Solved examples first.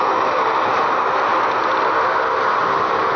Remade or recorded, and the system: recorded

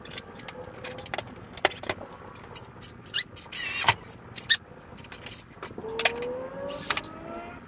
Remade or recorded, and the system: recorded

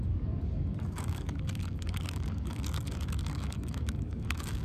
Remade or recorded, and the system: remade, codec, DAC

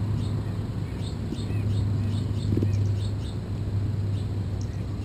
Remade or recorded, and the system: recorded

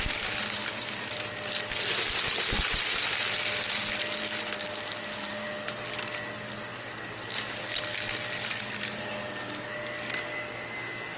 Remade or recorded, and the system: recorded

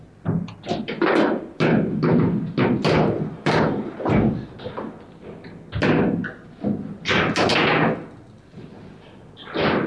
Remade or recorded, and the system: recorded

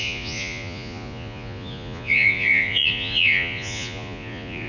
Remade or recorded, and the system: remade, vocoder, Vocos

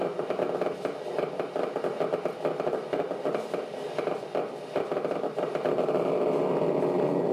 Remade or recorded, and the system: recorded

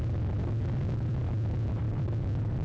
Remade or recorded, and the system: recorded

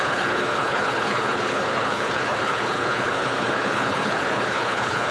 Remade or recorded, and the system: remade, codec, HILCodec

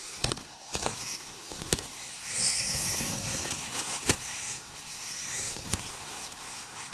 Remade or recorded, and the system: remade, codec, SNAC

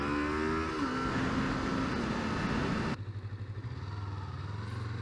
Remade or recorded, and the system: recorded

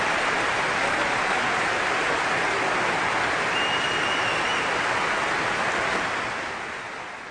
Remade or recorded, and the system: recorded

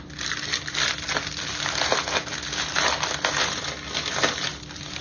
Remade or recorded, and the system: recorded